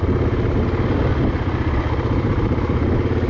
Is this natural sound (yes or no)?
yes